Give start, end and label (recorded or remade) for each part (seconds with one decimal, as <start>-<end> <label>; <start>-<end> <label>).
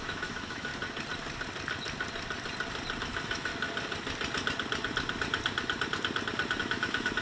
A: 0.0-0.7 remade; 0.7-3.0 recorded; 3.0-3.5 remade; 3.5-6.6 recorded; 6.6-7.2 remade